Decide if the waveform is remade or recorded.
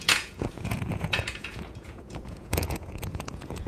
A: remade